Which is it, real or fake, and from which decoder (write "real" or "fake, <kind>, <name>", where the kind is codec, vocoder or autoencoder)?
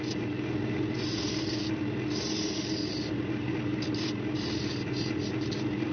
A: real